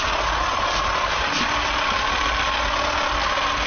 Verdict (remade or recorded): recorded